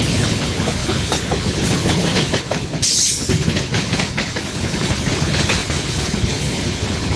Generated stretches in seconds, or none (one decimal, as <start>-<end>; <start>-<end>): 0.0-7.2